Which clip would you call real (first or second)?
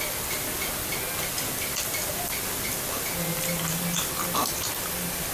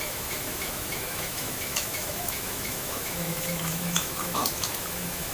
first